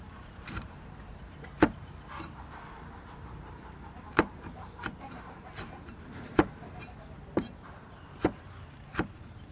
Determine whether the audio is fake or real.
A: fake